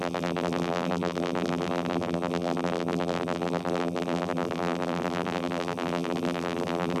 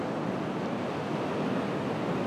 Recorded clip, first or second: second